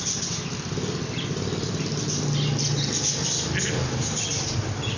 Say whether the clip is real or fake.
real